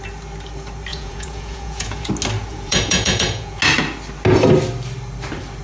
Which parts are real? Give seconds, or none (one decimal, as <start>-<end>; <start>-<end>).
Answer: 0.0-0.9; 2.1-2.5; 3.6-5.6